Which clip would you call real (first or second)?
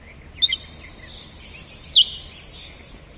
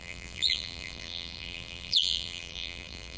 first